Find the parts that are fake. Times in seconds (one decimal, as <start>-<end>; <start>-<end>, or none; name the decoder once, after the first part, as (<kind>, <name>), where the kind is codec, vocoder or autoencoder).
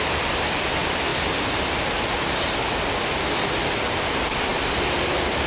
none